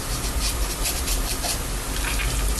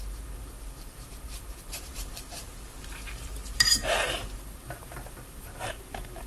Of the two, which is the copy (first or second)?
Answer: second